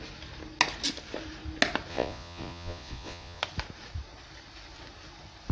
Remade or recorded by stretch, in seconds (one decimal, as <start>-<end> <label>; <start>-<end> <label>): 0.0-1.9 recorded; 1.9-3.4 remade; 3.4-5.5 recorded